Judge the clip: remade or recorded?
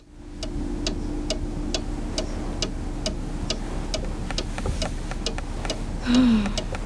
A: recorded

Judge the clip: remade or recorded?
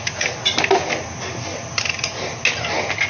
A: recorded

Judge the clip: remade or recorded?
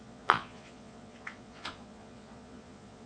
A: remade